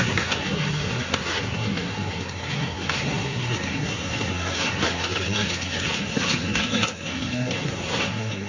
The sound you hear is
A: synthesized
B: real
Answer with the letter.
A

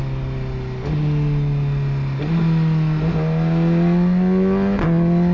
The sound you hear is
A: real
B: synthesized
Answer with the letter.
A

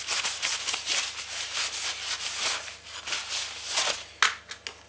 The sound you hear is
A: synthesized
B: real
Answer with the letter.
B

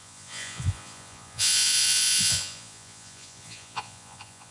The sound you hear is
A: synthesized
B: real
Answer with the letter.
A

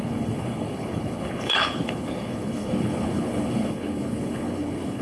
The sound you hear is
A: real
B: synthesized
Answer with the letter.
B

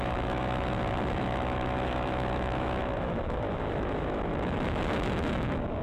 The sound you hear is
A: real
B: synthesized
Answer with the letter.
B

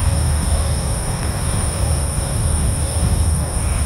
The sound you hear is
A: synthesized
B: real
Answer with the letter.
A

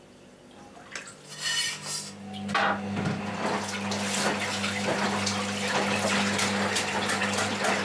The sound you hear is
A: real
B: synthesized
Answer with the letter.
A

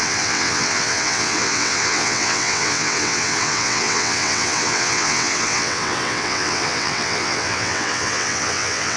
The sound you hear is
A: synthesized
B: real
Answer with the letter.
A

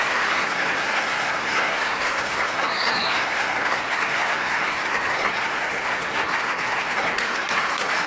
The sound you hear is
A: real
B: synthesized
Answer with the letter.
B